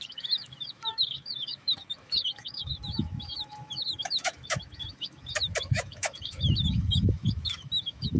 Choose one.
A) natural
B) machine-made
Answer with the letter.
B